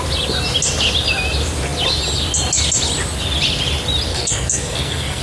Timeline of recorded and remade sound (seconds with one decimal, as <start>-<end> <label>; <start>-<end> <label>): 0.0-4.1 recorded; 4.1-5.2 remade